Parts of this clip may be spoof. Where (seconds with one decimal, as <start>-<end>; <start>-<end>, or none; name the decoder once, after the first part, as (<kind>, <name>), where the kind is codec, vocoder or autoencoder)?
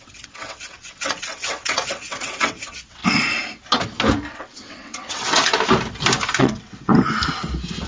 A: 0.0-3.0 (vocoder, WaveNeXt); 4.3-5.5; 6.4-6.9